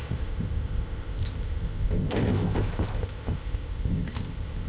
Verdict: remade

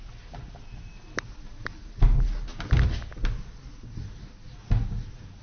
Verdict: recorded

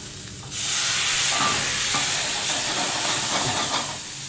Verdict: recorded